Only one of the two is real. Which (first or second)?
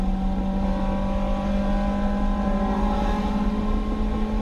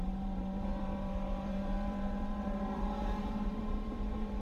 first